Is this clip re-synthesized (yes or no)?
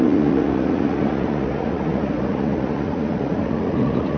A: yes